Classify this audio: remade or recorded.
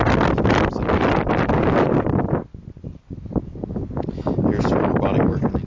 recorded